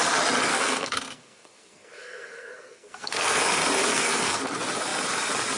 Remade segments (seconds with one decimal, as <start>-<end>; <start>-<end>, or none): 0.5-3.4; 3.8-4.4